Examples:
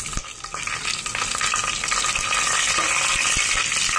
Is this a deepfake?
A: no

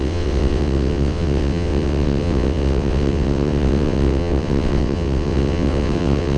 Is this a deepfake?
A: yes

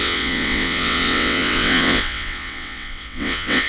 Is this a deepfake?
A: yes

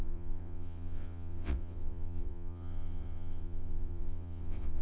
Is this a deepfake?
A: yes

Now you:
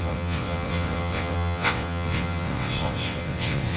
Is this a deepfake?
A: yes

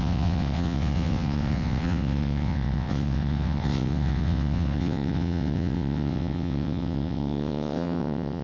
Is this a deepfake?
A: yes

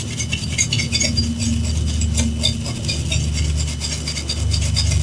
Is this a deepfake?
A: no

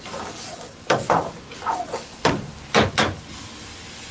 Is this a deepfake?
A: no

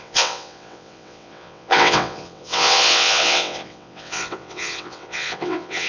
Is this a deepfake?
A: yes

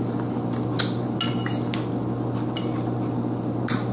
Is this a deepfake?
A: no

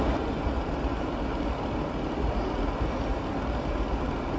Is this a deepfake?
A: no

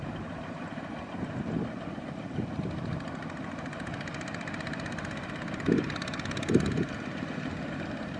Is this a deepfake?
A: no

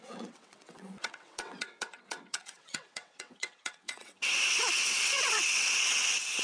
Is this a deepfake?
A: yes